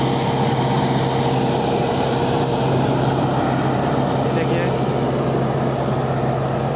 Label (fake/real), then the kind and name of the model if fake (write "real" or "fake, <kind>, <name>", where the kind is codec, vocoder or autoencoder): real